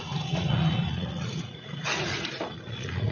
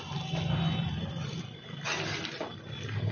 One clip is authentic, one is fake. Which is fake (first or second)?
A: first